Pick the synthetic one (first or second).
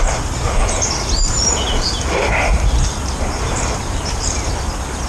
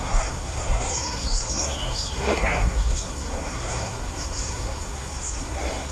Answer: second